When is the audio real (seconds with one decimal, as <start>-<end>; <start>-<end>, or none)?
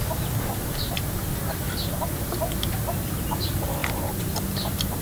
0.0-5.0